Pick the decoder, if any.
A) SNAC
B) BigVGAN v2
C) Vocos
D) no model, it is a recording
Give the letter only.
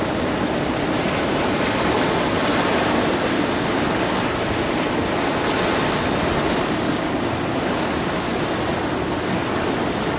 D